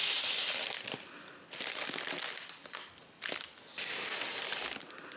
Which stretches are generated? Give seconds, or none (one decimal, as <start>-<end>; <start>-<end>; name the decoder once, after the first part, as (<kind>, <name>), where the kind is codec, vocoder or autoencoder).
none